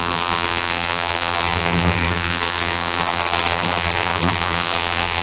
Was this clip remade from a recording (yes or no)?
yes